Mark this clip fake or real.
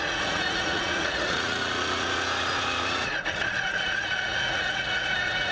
fake